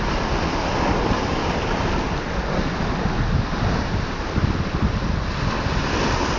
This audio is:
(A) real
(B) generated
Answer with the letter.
A